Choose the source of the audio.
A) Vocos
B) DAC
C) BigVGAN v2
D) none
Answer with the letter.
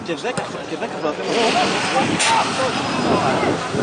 D